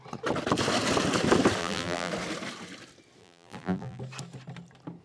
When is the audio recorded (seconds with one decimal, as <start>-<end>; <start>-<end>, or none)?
0.0-1.6; 2.1-3.2; 4.0-5.0